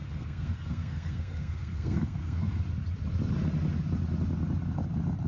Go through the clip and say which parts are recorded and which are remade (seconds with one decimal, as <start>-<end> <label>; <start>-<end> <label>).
0.0-2.6 remade; 2.6-5.3 recorded